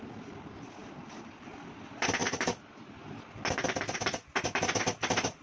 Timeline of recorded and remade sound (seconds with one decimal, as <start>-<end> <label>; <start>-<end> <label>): 0.0-5.4 recorded